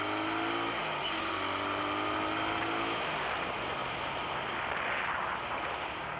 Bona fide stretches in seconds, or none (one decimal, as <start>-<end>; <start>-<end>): 0.0-6.2